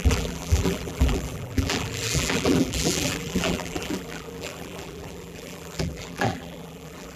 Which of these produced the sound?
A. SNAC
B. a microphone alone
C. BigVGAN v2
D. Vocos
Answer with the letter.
C